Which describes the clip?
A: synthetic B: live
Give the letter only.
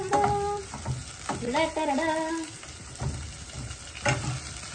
B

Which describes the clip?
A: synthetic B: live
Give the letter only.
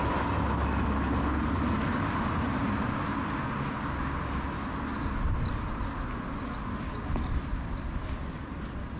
B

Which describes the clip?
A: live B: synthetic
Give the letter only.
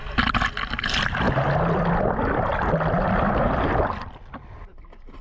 A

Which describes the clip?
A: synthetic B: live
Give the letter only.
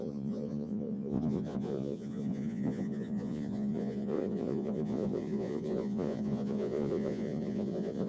A